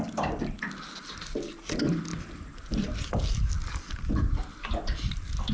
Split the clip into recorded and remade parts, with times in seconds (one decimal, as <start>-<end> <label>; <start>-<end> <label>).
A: 0.0-5.5 recorded